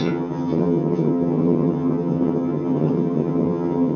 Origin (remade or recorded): remade